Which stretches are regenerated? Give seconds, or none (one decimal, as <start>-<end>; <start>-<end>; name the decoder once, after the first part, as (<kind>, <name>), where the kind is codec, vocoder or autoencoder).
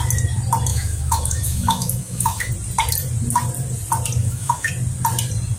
0.7-2.5 (autoencoder, DAC-VAE); 4.2-4.7